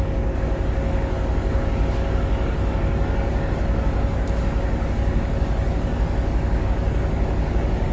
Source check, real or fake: fake